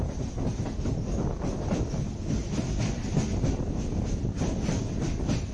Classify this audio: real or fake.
real